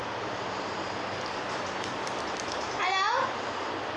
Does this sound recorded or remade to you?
recorded